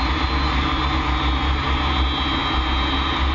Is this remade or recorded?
recorded